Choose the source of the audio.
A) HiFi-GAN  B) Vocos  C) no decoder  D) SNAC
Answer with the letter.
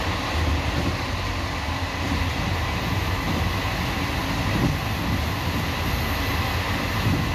C